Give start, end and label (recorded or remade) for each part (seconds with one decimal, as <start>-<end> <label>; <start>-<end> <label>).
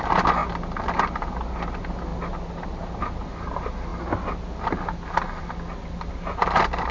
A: 0.0-6.9 recorded